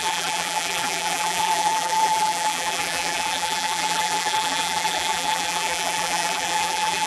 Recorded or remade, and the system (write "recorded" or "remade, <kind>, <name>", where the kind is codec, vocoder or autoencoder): remade, vocoder, BigVGAN v2